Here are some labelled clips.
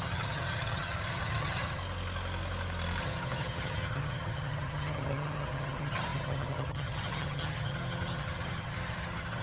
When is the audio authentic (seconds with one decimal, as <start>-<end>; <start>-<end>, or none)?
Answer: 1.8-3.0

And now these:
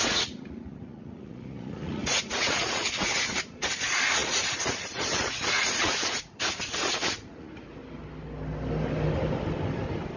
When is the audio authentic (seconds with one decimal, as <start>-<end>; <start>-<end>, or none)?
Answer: 7.8-10.2

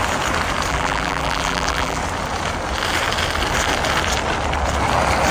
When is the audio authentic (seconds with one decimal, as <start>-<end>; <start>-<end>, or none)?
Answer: 0.0-0.7; 2.0-5.3

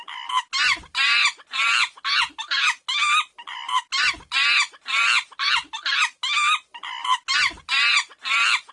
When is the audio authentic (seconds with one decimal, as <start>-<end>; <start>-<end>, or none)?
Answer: 0.0-8.7

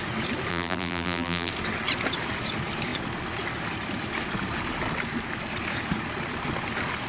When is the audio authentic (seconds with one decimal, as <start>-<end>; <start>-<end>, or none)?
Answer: 0.0-0.5; 1.5-7.1